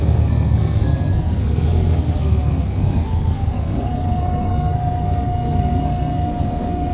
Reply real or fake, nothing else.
fake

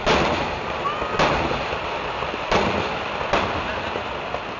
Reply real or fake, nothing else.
real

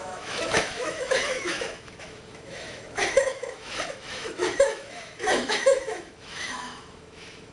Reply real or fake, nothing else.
fake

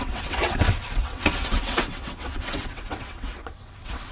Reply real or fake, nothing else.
fake